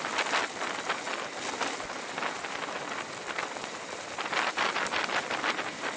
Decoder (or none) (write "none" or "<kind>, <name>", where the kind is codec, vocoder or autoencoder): none